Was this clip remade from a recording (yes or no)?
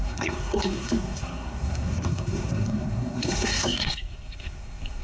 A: yes